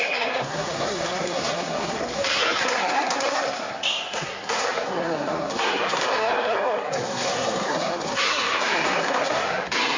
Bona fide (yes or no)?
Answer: no